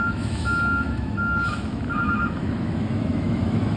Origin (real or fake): fake